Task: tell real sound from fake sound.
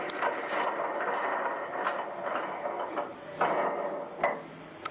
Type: real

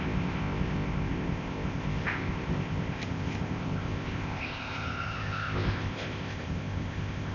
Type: fake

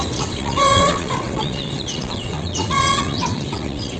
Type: fake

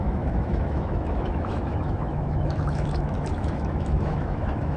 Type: fake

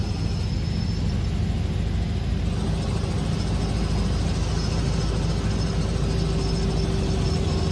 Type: real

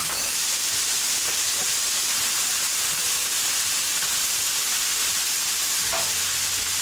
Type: fake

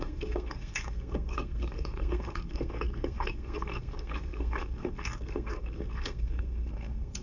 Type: fake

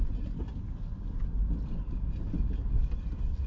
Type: real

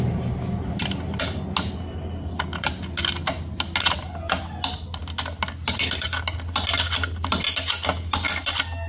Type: real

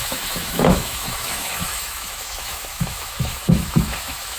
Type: fake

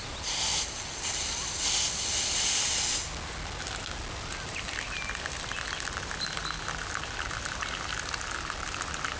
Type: real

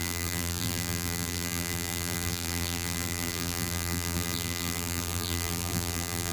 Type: fake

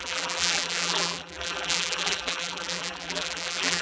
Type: fake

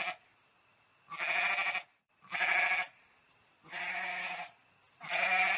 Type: real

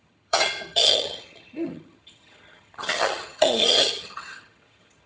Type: fake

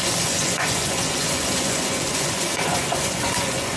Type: fake